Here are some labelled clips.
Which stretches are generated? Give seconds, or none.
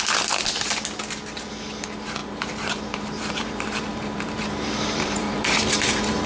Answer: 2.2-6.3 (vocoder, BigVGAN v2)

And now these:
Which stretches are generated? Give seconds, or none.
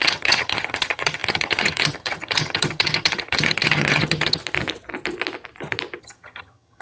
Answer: 0.0-4.4 (vocoder, HiFi-GAN); 6.0-6.8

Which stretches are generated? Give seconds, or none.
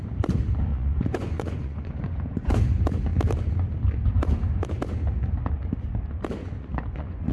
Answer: 0.7-2.6 (vocoder, Vocos); 6.4-7.3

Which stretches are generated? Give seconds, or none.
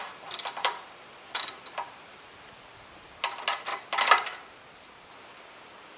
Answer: 0.0-2.5 (vocoder, BigVGAN v2)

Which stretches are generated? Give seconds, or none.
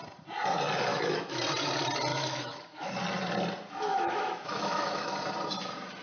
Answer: 0.9-1.4 (autoencoder, DAC-VAE); 2.1-2.9; 3.9-5.1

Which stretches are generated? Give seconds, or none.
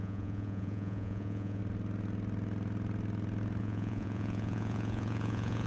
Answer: 0.0-1.6 (vocoder, Vocos); 3.6-5.7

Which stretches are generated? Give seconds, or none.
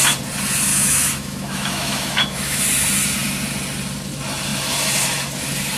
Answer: 0.7-2.6 (autoencoder, DAC-VAE)